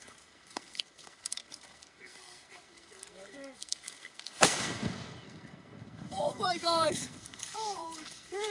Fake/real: fake